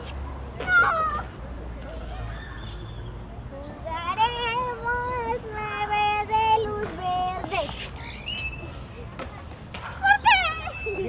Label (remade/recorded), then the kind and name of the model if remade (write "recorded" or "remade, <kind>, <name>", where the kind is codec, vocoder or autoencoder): recorded